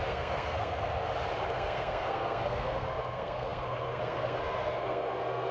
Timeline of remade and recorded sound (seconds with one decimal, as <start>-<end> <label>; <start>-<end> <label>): 0.0-0.9 remade; 0.9-1.5 recorded; 1.5-5.5 remade

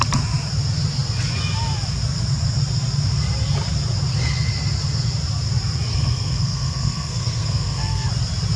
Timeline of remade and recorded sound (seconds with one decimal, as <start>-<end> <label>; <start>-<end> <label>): 0.0-5.9 recorded; 5.9-8.1 remade; 8.1-8.6 recorded

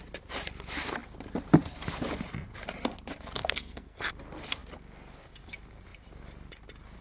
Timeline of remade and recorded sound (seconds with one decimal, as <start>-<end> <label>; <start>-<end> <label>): 0.0-3.4 recorded; 3.4-4.1 remade; 4.1-7.0 recorded

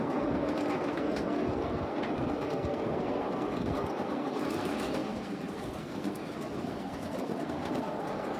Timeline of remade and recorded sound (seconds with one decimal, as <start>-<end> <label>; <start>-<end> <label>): 0.0-8.4 remade

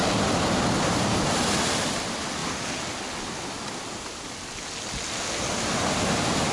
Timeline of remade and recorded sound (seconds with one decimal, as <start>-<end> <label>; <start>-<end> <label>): 0.0-6.5 recorded

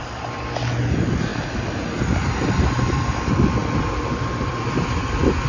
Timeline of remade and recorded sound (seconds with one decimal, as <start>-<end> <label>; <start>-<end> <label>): 0.0-5.5 recorded

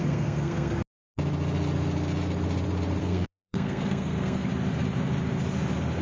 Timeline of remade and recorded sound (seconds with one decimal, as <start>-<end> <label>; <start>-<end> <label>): 0.0-0.7 remade; 0.7-3.0 recorded; 3.0-4.4 remade; 4.4-6.0 recorded

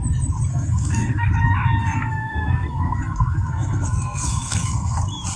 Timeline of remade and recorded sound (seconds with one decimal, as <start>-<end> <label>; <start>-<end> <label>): 0.0-0.5 recorded; 0.5-1.3 remade; 1.3-1.8 recorded; 1.8-5.0 remade; 5.0-5.4 recorded